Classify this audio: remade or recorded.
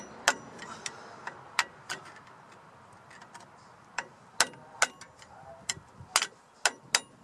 recorded